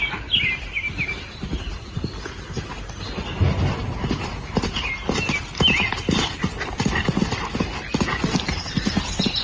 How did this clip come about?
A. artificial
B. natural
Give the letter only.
B